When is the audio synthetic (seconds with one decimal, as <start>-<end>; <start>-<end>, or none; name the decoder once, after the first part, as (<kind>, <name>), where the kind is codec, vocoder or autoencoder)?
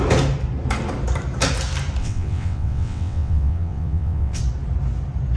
2.0-4.4 (vocoder, WaveNeXt)